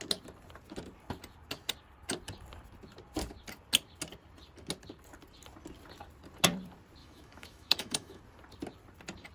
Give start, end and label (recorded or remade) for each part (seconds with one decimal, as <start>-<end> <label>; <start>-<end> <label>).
0.0-7.0 recorded; 7.0-8.2 remade; 8.2-9.3 recorded